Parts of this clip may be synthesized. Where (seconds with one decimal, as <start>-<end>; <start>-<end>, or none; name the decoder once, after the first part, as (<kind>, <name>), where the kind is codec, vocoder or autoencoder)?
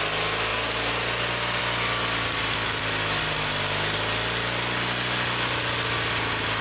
none